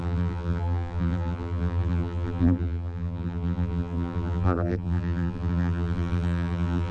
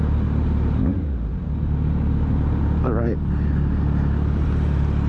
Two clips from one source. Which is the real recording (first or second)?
second